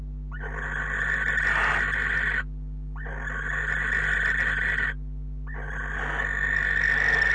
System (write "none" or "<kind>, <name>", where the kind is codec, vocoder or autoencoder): none